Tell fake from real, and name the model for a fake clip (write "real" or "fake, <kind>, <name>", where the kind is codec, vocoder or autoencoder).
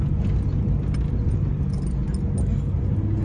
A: real